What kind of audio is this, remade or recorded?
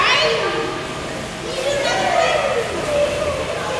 recorded